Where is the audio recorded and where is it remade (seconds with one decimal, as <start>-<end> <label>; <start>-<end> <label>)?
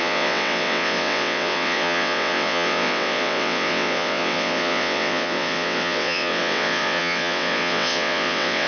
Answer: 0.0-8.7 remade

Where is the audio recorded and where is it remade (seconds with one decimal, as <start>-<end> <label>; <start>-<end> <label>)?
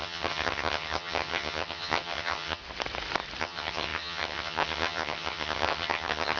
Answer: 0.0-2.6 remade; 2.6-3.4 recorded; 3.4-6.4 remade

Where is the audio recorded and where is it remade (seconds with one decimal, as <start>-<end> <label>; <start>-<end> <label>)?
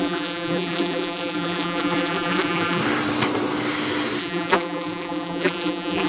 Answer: 0.0-2.8 remade; 2.8-4.2 recorded; 4.2-6.1 remade